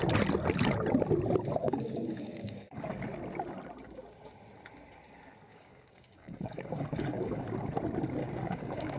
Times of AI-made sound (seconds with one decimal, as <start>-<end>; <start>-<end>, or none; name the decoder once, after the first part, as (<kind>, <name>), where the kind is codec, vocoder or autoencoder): 1.6-3.0 (codec, DAC); 5.5-7.4; 8.2-9.0